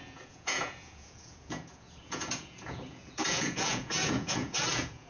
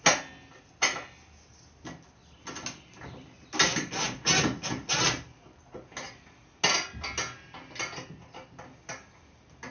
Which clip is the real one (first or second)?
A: second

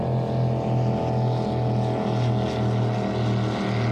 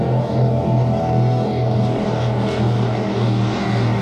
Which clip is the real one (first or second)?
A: first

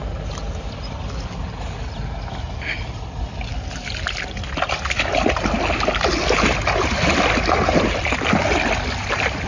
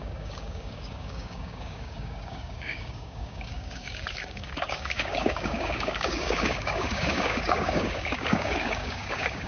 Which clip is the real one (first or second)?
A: first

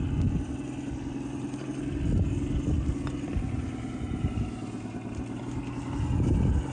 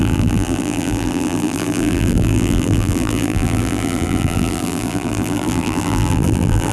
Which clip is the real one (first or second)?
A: first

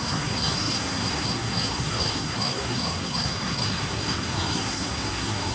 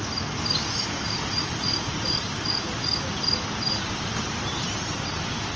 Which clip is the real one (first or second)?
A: second